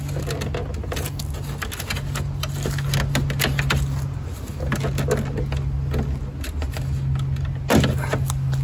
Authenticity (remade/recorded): recorded